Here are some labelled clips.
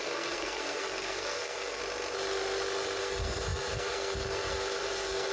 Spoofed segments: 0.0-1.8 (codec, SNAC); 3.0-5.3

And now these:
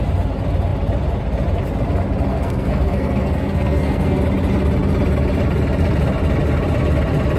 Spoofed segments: 2.3-4.2 (codec, SNAC)

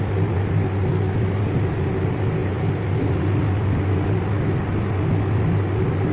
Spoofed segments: none

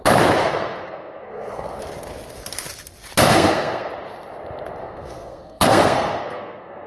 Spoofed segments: 0.4-1.8 (codec, SNAC); 3.3-3.9; 4.8-6.9

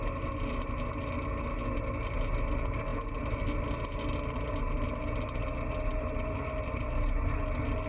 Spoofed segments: none

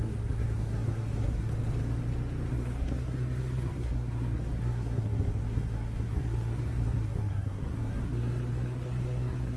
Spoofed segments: 0.0-1.5 (codec, SNAC); 2.5-9.6